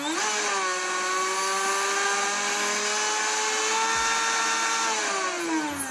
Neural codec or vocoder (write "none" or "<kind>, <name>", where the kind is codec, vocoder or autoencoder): none